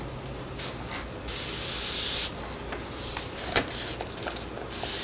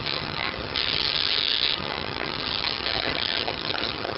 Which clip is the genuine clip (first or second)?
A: first